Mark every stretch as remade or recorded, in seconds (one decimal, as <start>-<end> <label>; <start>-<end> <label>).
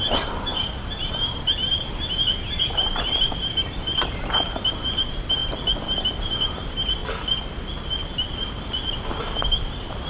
0.0-5.4 remade; 5.4-6.2 recorded; 6.2-7.0 remade; 7.0-9.6 recorded; 9.6-10.1 remade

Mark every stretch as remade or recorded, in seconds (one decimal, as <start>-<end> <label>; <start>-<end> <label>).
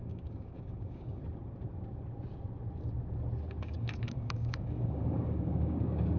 0.0-1.2 remade; 1.2-3.6 recorded; 3.6-6.2 remade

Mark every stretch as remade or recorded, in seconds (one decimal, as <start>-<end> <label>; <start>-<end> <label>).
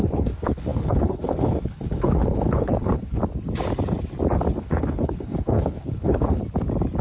0.0-3.2 remade; 3.2-4.6 recorded; 4.6-6.4 remade; 6.4-7.0 recorded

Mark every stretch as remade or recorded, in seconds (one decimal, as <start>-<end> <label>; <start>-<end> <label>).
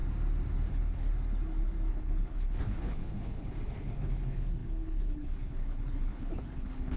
0.0-0.7 recorded; 0.7-1.1 remade; 1.1-1.9 recorded; 1.9-7.0 remade